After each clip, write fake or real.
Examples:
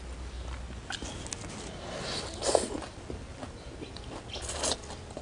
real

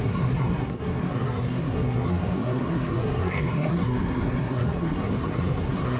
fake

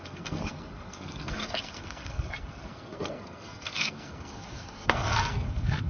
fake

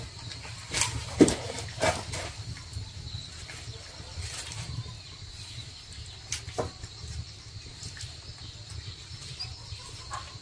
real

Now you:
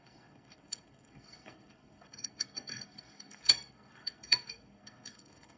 fake